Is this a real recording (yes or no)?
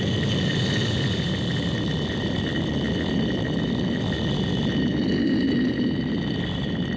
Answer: yes